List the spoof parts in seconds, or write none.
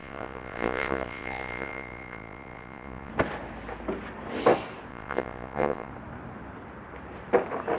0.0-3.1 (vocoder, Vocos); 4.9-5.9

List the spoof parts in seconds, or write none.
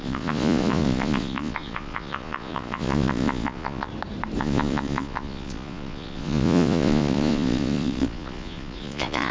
0.0-3.9 (vocoder, Vocos); 4.4-9.3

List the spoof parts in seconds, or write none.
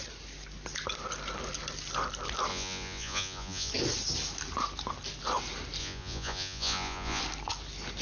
2.5-3.7 (vocoder, Vocos); 5.8-7.2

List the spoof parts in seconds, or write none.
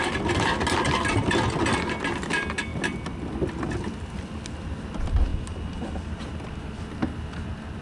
none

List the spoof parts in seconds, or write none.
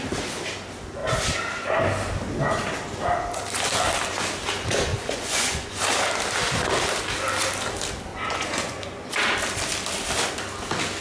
4.9-5.8 (vocoder, Vocos); 8.1-9.1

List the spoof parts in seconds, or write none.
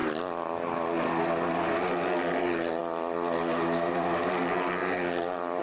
none